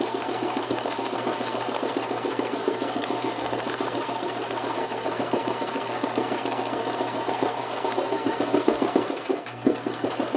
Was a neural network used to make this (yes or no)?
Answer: yes